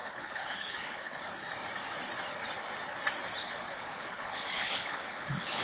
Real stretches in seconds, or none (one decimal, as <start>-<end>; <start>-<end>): 1.2-3.4